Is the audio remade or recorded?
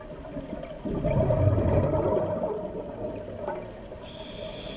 recorded